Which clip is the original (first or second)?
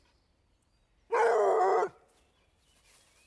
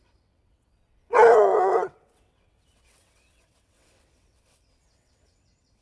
first